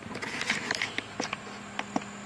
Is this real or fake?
real